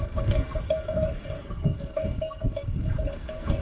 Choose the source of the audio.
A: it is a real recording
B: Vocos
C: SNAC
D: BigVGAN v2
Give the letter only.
C